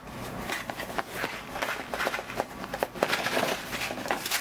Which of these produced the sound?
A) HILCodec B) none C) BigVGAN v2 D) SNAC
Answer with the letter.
B